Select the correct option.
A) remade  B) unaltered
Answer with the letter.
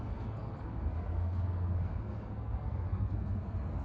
A